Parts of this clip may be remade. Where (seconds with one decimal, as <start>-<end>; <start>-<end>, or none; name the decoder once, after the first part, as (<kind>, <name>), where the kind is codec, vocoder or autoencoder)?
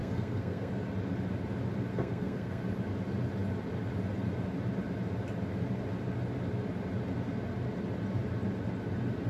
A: 0.0-0.7 (codec, SNAC); 1.9-2.6